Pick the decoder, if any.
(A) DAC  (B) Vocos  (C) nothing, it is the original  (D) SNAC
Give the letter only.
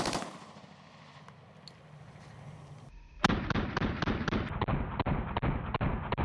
C